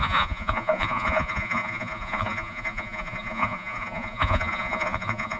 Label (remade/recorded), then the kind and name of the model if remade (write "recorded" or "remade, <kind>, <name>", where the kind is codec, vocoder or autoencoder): remade, vocoder, Vocos